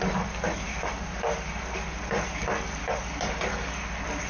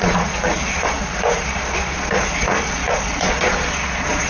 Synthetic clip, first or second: second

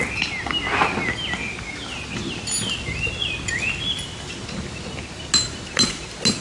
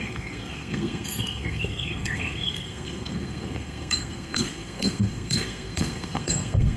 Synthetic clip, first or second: second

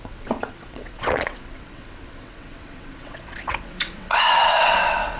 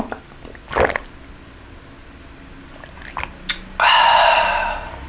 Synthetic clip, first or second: first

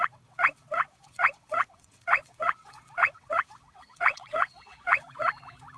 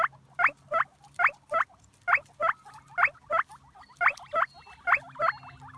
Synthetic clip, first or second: first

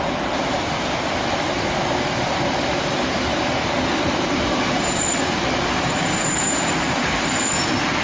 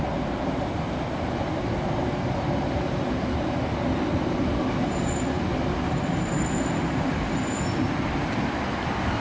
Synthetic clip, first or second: first